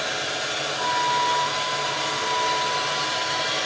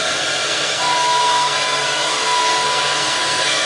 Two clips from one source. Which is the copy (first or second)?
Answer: second